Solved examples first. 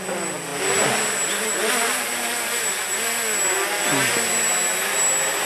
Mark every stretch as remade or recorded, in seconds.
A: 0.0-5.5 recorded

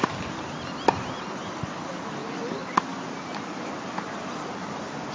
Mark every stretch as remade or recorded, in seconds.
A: 0.0-5.1 recorded

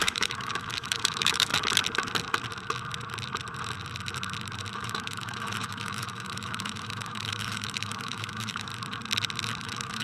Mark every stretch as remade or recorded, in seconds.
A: 0.0-1.5 remade; 1.5-4.7 recorded; 4.7-8.7 remade; 8.7-9.6 recorded; 9.6-10.0 remade

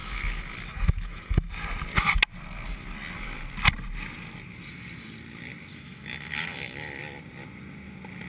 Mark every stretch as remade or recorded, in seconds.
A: 0.0-1.5 remade; 1.5-5.7 recorded; 5.7-7.0 remade; 7.0-8.3 recorded

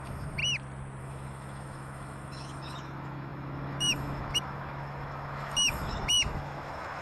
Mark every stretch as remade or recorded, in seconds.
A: 0.0-0.4 remade; 0.4-1.0 recorded; 1.0-7.0 remade

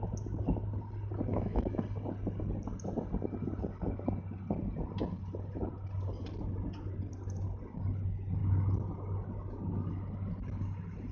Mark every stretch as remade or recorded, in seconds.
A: 0.0-1.3 recorded; 1.3-1.8 remade; 1.8-11.1 recorded

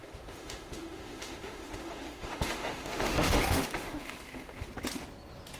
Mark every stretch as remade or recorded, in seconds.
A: 0.0-4.7 remade; 4.7-5.6 recorded